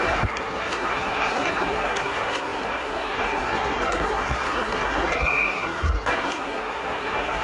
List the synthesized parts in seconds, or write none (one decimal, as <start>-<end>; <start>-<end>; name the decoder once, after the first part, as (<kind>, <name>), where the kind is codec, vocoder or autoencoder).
0.0-7.4 (codec, SNAC)